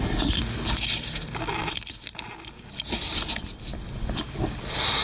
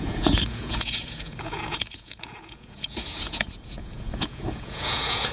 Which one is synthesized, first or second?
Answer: second